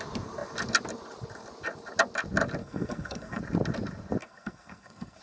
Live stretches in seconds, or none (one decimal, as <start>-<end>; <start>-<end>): 0.0-2.6; 3.4-4.2